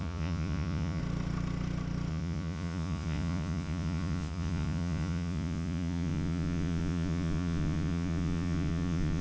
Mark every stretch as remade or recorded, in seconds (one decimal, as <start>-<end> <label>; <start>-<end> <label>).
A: 0.0-1.0 remade; 1.0-2.1 recorded; 2.1-9.2 remade